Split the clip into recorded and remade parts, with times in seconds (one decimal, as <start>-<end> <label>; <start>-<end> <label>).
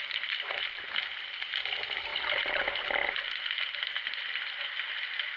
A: 0.0-5.4 recorded